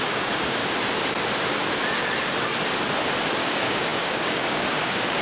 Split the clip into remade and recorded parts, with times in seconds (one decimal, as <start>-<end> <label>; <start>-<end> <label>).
0.0-0.6 remade; 0.6-3.4 recorded; 3.4-5.2 remade